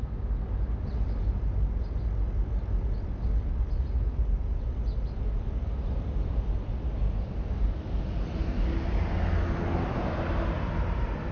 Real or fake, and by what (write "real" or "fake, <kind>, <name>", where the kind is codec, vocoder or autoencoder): real